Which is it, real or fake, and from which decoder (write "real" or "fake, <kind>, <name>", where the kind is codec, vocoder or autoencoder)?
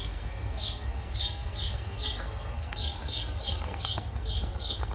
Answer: fake, codec, SNAC